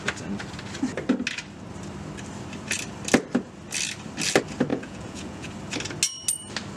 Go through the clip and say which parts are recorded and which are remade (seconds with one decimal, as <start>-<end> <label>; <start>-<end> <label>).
0.0-4.7 recorded; 4.7-5.5 remade; 5.5-6.8 recorded